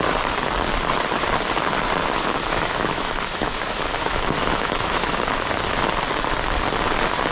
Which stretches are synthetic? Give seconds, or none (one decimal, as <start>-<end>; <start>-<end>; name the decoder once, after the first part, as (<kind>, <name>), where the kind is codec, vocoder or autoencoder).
2.0-5.5 (autoencoder, DAC-VAE)